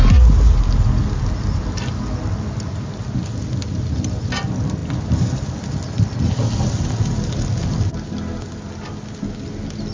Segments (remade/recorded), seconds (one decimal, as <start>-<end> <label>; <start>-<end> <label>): 0.0-9.9 recorded